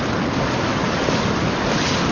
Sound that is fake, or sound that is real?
real